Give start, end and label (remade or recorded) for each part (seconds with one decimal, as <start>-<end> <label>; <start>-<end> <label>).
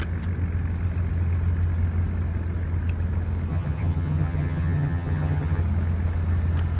0.0-3.5 recorded; 3.5-5.6 remade; 5.6-6.8 recorded